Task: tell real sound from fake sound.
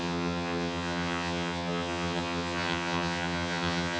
fake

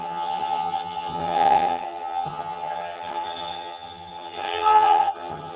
fake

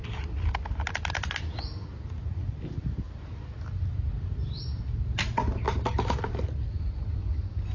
real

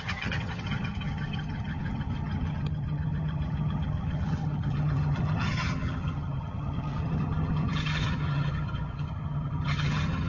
fake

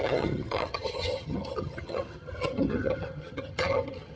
fake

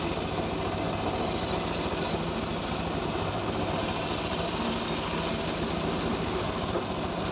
real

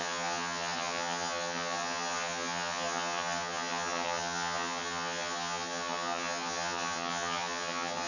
fake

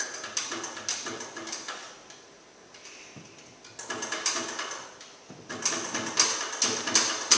real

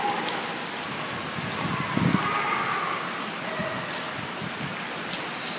real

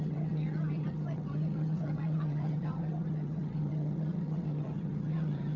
fake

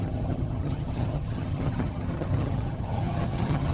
fake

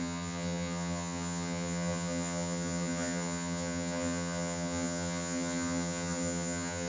fake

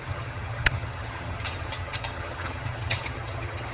fake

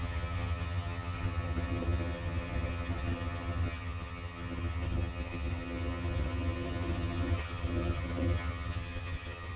fake